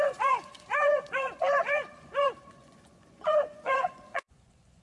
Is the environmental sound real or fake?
fake